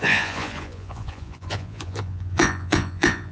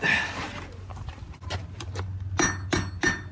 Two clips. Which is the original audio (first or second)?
second